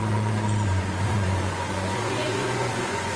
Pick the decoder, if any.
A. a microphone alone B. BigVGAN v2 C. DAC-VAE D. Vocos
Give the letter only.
D